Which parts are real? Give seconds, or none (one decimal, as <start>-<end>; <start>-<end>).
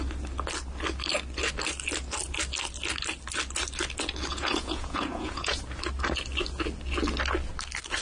0.0-4.3; 5.6-8.0